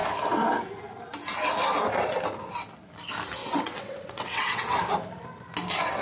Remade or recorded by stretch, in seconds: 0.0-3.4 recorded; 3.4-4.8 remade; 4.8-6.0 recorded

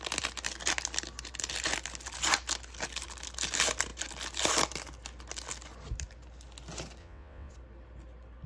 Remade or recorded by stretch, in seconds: 0.0-7.0 recorded; 7.0-7.5 remade; 7.5-8.5 recorded

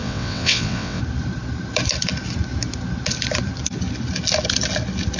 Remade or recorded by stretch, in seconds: 0.0-1.0 remade; 1.0-5.2 recorded

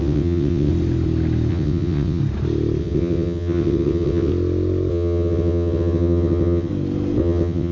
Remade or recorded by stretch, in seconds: 0.0-0.7 remade; 0.7-1.5 recorded; 1.5-2.2 remade; 2.2-2.8 recorded; 2.8-4.3 remade; 4.3-4.9 recorded; 4.9-6.7 remade; 6.7-7.2 recorded; 7.2-7.7 remade

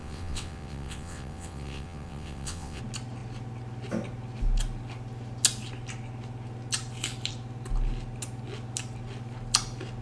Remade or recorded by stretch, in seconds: 0.0-2.8 remade; 2.8-10.0 recorded

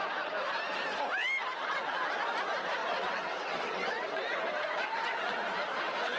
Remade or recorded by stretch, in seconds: 0.0-1.6 recorded; 1.6-2.2 remade; 2.2-2.8 recorded; 2.8-6.2 remade

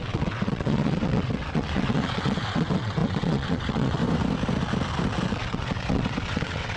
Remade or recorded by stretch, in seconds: 0.0-4.0 remade; 4.0-5.3 recorded; 5.3-6.8 remade